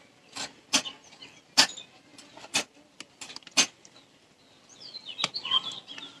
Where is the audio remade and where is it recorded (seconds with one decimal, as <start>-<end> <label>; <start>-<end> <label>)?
0.0-6.2 recorded